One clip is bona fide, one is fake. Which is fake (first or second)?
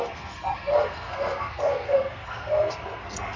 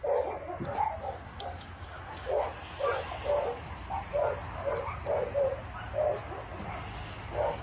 first